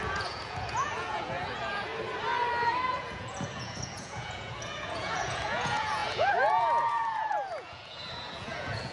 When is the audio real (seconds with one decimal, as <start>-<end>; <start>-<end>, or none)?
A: 1.9-3.0